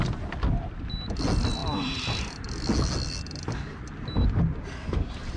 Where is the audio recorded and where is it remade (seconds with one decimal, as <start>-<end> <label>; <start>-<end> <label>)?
0.0-5.4 recorded

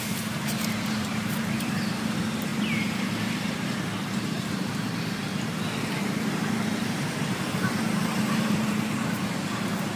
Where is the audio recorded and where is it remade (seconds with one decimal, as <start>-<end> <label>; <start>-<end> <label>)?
0.0-5.3 remade; 5.3-5.8 recorded; 5.8-10.0 remade